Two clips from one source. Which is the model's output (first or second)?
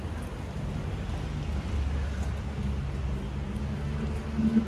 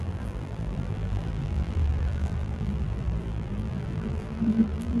second